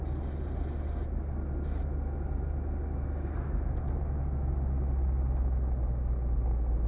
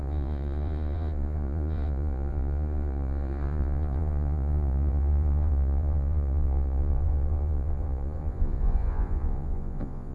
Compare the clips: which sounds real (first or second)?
first